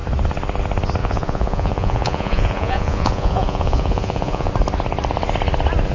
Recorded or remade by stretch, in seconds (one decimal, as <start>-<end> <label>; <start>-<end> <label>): 0.0-1.0 recorded; 1.0-4.5 remade; 4.5-5.9 recorded